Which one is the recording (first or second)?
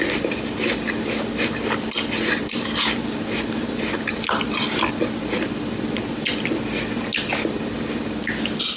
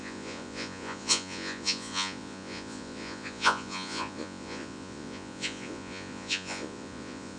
first